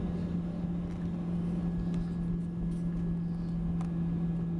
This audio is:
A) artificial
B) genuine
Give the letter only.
B